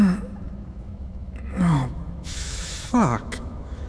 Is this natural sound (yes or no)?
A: no